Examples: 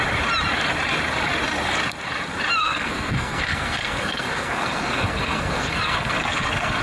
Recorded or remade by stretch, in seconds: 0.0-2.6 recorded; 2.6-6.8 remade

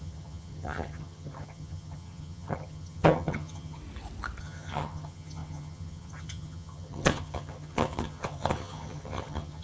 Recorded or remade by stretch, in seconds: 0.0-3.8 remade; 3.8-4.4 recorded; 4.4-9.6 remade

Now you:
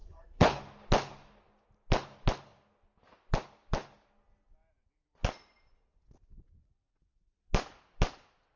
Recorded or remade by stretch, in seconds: 0.0-0.6 remade; 0.6-8.6 recorded

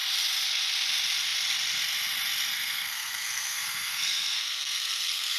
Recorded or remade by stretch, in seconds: 0.0-2.5 recorded; 2.5-5.4 remade